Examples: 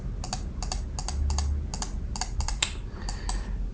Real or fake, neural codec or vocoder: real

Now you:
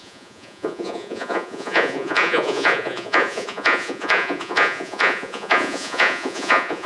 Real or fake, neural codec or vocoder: fake, vocoder, Vocos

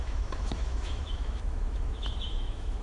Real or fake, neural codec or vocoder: fake, autoencoder, DAC-VAE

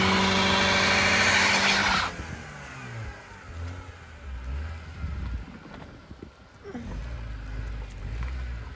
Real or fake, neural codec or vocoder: real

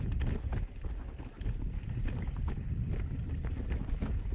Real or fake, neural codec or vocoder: real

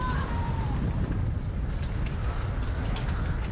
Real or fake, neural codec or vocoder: real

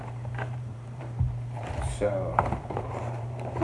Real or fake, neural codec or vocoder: fake, vocoder, BigVGAN v2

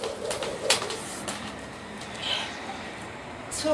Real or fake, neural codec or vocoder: fake, vocoder, BigVGAN v2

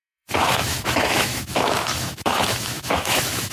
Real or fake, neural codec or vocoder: fake, autoencoder, DAC-VAE